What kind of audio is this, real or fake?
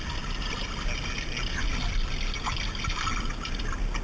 real